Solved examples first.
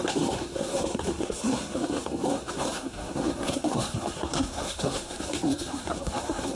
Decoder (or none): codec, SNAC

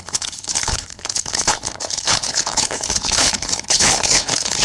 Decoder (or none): codec, HILCodec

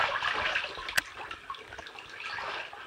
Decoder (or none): vocoder, BigVGAN v2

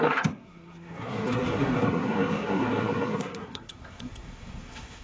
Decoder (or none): codec, SNAC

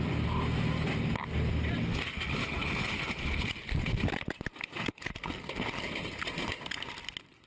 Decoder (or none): none